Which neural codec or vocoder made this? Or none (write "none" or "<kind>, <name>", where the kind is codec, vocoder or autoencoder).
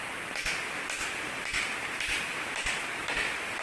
none